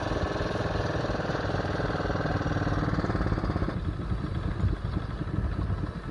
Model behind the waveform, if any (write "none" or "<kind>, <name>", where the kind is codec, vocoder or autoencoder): none